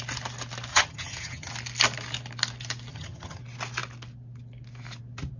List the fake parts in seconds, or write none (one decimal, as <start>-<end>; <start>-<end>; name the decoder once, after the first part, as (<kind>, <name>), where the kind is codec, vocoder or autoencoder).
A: 0.7-1.5 (vocoder, HiFi-GAN); 2.9-3.4